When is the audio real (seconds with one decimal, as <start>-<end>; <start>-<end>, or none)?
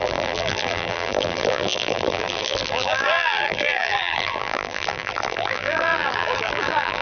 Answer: none